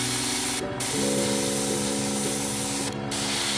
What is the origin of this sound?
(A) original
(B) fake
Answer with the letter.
A